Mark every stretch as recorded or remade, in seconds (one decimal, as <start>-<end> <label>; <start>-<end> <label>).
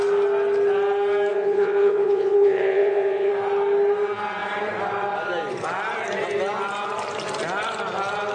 0.0-1.3 recorded; 1.3-3.3 remade; 3.3-8.3 recorded